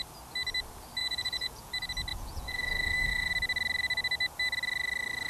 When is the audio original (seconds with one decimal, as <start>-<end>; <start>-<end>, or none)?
0.0-1.0; 1.7-2.1; 3.3-5.3